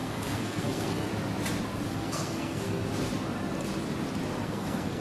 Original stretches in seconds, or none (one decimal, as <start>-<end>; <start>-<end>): 1.1-1.9; 2.8-4.4